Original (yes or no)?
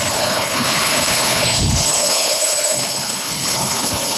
no